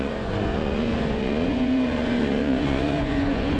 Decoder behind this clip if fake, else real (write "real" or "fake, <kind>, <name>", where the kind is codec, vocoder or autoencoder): fake, vocoder, Vocos